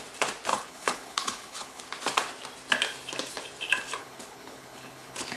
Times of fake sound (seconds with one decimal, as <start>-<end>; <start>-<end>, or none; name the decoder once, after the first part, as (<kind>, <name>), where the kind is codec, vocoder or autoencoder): 0.5-1.8 (codec, HILCodec); 4.0-5.4

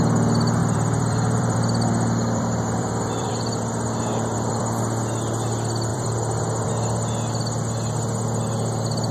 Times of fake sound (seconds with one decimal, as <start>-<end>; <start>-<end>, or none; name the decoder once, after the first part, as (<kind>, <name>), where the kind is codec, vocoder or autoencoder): 0.6-4.6 (vocoder, BigVGAN v2); 5.9-6.7

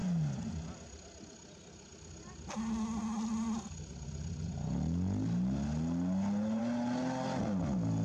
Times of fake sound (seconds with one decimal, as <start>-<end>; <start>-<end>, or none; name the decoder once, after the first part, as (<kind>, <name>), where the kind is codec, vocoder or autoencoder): none

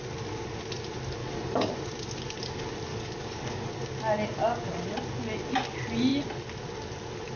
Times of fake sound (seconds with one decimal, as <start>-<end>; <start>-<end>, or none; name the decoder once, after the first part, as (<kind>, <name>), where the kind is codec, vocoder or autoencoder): 1.2-1.7 (codec, DAC); 2.9-3.7

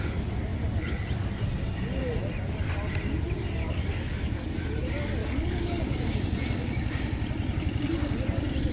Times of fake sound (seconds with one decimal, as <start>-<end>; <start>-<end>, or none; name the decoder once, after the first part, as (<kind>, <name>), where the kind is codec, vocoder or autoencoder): 3.6-4.6 (codec, DAC); 5.2-6.1

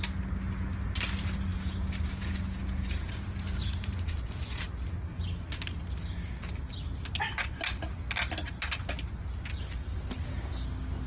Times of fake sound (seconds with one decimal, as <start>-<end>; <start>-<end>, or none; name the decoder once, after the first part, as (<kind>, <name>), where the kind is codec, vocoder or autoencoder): 1.5-4.6 (vocoder, Vocos)

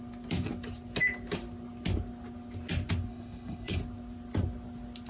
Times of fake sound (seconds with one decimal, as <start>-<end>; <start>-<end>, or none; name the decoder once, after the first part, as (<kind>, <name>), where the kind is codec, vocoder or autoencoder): 3.1-3.8 (codec, HILCodec)